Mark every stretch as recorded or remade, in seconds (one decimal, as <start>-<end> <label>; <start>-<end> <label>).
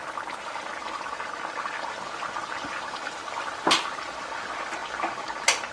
0.0-1.2 remade; 1.2-2.4 recorded; 2.4-3.8 remade; 3.8-5.7 recorded